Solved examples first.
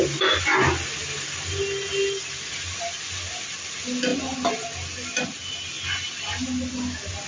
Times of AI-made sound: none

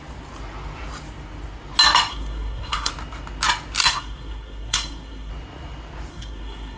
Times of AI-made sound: 2.1-2.9; 3.8-5.3; 6.1-6.8

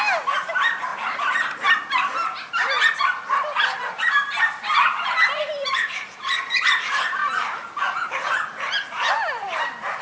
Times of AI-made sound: 0.0-0.9; 3.8-7.2; 8.1-10.0

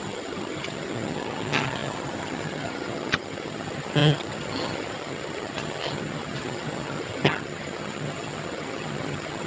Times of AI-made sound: 0.0-9.5

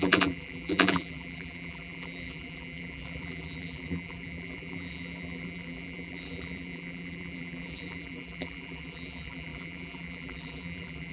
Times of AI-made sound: 0.0-11.1

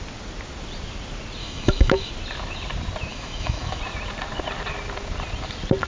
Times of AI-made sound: 1.4-2.1; 3.1-3.8